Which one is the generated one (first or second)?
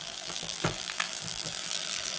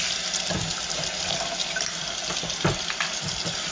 first